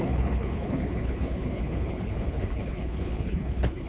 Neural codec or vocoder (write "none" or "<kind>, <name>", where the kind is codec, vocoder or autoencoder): codec, HILCodec